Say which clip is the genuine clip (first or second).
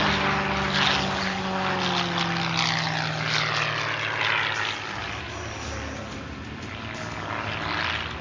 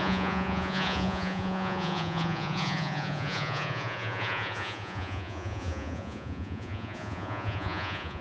first